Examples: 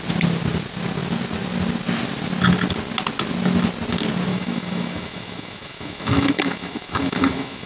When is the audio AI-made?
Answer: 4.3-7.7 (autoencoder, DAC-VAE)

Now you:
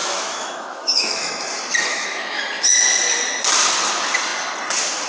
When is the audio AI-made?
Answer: 0.0-1.3 (autoencoder, DAC-VAE); 1.9-2.4

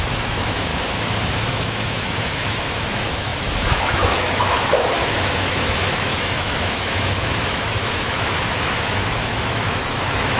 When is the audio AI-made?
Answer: 0.0-0.7 (autoencoder, DAC-VAE); 1.5-10.4

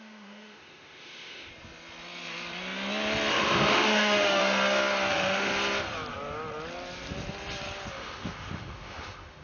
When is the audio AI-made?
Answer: 0.0-1.5 (autoencoder, DAC-VAE); 3.3-4.4; 5.1-5.5; 7.9-9.4